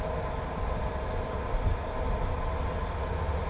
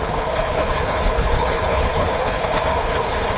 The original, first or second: first